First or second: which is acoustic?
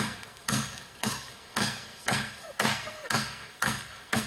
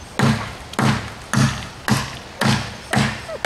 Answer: second